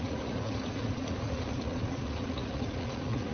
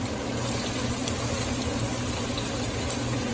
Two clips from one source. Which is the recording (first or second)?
second